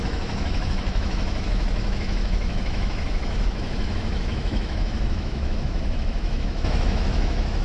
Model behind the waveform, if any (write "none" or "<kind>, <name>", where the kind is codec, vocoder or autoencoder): autoencoder, DAC-VAE